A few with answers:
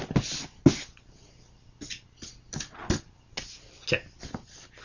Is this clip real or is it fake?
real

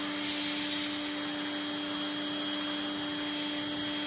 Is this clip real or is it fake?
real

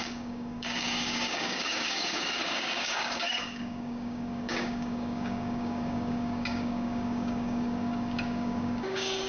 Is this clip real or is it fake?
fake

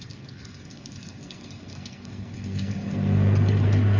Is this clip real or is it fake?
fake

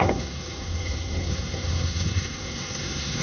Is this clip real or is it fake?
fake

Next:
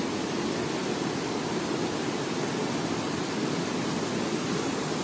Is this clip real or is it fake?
real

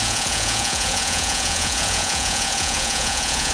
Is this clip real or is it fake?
fake